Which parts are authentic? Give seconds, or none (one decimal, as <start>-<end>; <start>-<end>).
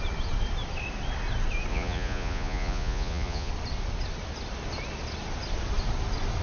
0.0-1.7; 3.5-6.4